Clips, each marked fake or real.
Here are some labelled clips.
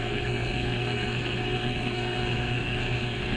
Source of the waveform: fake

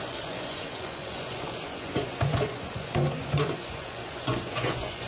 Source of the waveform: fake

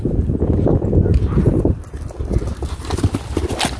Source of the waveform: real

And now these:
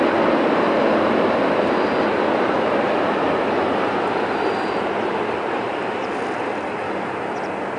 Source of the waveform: real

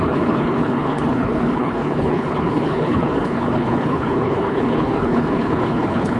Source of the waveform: fake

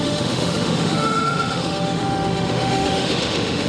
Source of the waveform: fake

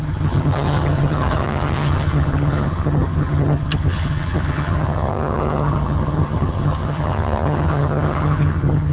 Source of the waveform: fake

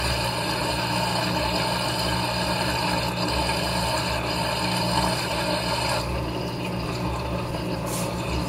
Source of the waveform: real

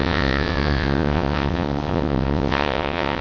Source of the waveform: fake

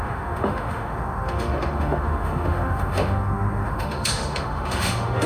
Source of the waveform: fake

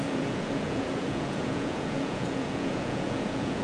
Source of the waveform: fake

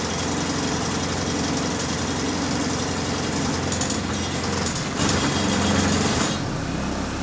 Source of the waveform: real